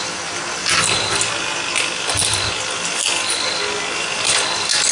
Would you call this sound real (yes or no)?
yes